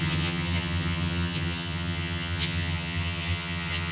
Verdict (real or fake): fake